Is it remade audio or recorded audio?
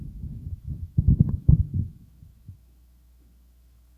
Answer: remade